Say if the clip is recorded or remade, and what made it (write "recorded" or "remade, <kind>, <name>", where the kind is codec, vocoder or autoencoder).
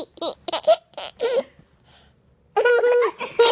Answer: recorded